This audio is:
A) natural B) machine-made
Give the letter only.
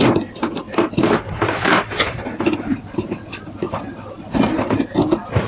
A